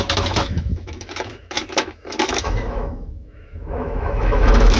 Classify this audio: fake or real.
fake